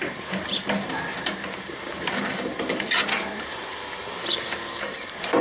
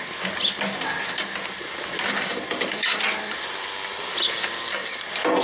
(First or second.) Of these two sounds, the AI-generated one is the first